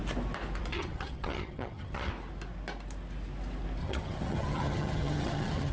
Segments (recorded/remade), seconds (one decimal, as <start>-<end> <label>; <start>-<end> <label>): 0.0-0.7 recorded; 0.7-2.1 remade; 2.1-3.8 recorded; 3.8-5.7 remade